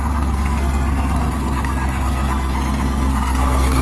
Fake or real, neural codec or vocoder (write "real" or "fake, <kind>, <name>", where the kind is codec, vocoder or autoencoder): fake, codec, SNAC